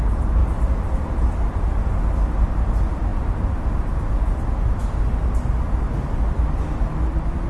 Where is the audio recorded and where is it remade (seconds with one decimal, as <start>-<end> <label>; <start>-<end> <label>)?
0.0-0.4 recorded; 0.4-1.8 remade; 1.8-7.5 recorded